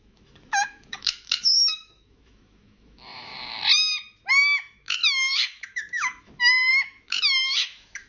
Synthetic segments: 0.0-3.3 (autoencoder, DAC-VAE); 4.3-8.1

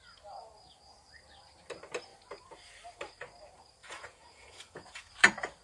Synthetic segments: 3.8-5.1 (vocoder, Vocos)

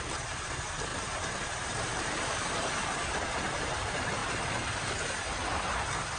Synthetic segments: 0.9-3.6 (vocoder, BigVGAN v2); 4.2-4.9

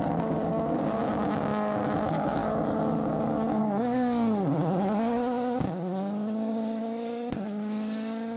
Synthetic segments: 0.0-8.4 (codec, DAC)

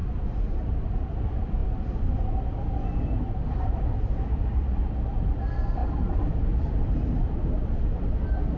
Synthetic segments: 0.0-0.9 (vocoder, BigVGAN v2)

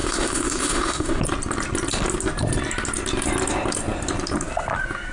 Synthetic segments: 0.0-1.2 (autoencoder, DAC-VAE)

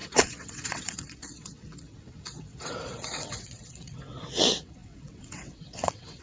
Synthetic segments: 0.0-6.2 (vocoder, WaveNeXt)